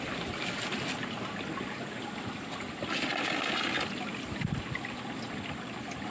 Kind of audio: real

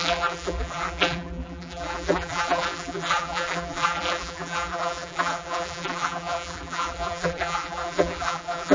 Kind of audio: fake